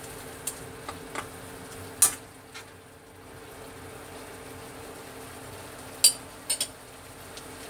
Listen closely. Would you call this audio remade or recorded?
recorded